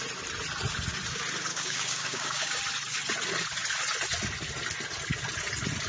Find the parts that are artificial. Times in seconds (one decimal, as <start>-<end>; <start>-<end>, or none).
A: 1.5-2.6